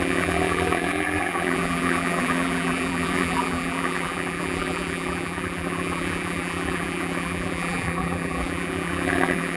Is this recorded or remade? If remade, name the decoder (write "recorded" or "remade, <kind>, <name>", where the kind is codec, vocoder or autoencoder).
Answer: remade, vocoder, BigVGAN v2